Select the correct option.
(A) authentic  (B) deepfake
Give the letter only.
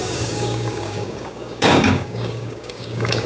B